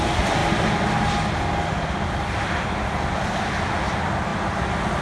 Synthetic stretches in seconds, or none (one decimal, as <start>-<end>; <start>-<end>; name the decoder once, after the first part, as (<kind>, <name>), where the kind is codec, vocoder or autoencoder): none